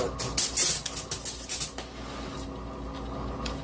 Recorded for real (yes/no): yes